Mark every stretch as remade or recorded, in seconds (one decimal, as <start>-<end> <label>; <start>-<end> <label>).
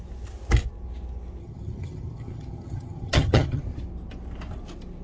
0.0-1.4 recorded; 1.4-3.6 remade; 3.6-5.0 recorded